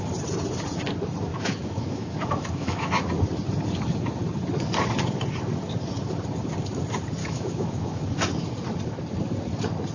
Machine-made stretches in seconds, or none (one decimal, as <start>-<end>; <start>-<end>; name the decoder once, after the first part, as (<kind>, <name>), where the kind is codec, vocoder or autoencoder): 1.3-2.9 (autoencoder, DAC-VAE); 7.2-8.2